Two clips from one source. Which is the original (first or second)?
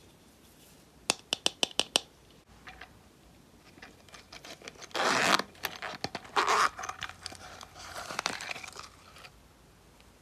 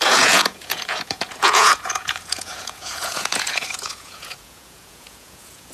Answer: first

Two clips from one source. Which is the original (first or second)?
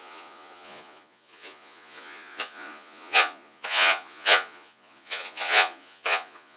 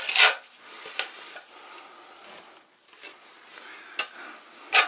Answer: second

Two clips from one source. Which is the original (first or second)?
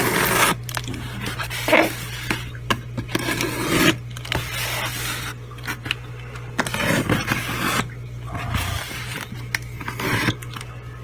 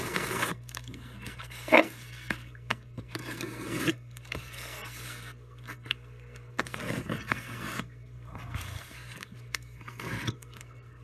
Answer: first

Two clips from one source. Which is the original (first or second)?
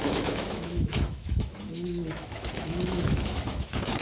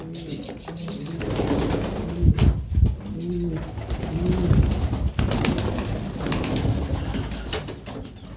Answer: second